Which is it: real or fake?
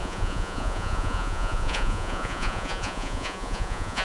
fake